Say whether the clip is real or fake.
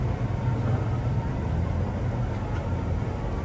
real